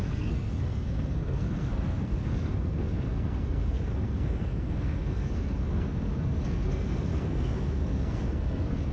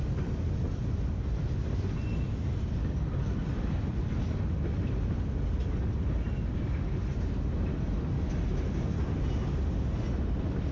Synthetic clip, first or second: first